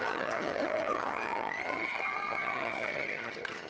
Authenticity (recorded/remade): remade